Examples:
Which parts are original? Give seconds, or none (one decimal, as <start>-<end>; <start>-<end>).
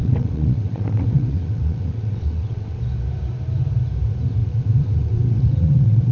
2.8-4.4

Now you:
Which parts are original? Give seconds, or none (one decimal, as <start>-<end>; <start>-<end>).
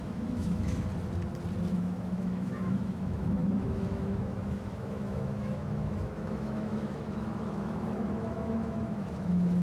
0.9-1.7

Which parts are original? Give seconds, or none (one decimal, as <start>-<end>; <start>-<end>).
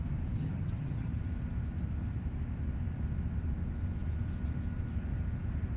0.0-0.4; 1.1-5.8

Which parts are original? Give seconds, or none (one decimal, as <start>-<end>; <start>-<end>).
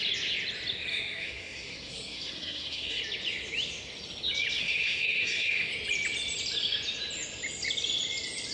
0.0-0.9; 3.0-4.6; 5.7-8.5